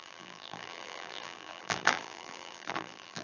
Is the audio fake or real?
fake